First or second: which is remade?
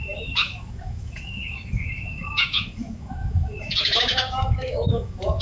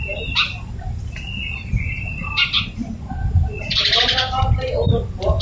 first